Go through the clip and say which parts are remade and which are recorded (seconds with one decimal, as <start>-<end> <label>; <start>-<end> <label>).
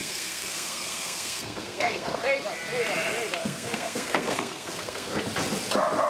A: 0.0-2.2 remade; 2.2-3.4 recorded; 3.4-5.2 remade; 5.2-6.1 recorded